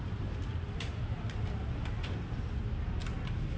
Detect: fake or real real